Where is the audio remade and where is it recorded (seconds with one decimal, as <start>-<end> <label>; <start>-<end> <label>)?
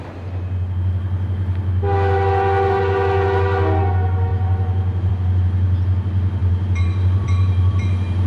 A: 0.0-6.4 recorded; 6.4-7.9 remade; 7.9-8.3 recorded